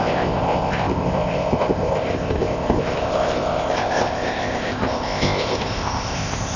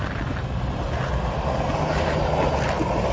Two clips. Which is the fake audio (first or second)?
first